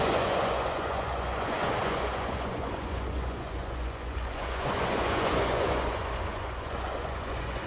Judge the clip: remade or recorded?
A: remade